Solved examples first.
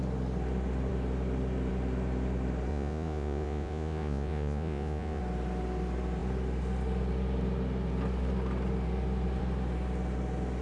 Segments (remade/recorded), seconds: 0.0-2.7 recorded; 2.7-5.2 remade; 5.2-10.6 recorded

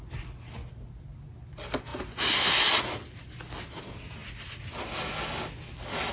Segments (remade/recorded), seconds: 0.0-6.1 recorded

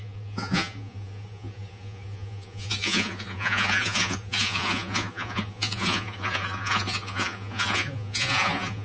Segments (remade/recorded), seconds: 0.0-8.8 remade

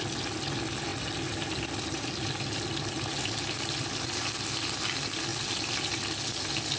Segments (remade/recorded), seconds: 0.0-6.8 recorded

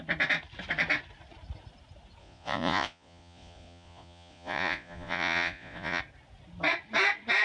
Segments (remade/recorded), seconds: 0.0-2.2 recorded; 2.2-6.0 remade; 6.0-7.4 recorded